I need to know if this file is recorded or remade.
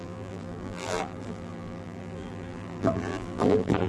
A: remade